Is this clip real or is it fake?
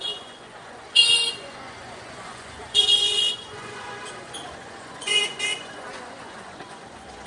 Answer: fake